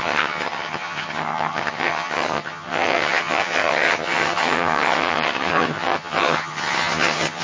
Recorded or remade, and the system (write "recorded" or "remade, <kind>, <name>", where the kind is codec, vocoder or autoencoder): remade, vocoder, HiFi-GAN